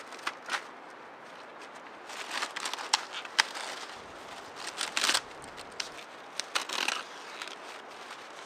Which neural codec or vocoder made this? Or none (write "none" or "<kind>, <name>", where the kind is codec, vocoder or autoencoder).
none